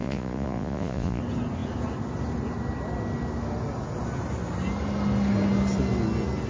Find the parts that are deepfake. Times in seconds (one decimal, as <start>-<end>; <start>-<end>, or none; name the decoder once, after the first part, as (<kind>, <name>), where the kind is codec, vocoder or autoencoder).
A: 0.0-1.2 (vocoder, Vocos)